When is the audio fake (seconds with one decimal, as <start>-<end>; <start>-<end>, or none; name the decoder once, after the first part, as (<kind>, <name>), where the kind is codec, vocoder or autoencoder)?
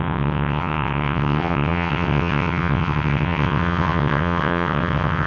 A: 0.0-5.3 (vocoder, WaveNeXt)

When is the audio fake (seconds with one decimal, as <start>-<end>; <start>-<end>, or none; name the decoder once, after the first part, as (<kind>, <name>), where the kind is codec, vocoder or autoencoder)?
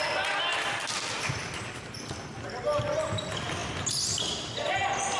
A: 0.5-3.0 (vocoder, BigVGAN v2)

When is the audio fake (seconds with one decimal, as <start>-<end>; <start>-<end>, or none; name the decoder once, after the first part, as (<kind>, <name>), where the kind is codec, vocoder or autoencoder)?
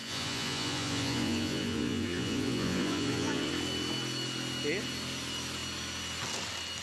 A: 0.0-3.5 (vocoder, Vocos)